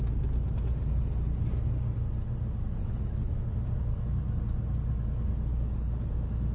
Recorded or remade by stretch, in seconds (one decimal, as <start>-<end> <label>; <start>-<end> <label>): 0.0-2.8 recorded; 2.8-3.3 remade; 3.3-5.5 recorded; 5.5-6.1 remade; 6.1-6.5 recorded